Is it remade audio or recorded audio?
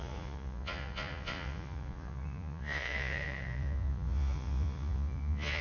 remade